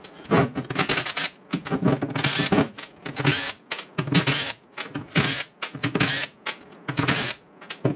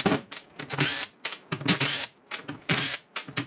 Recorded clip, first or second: first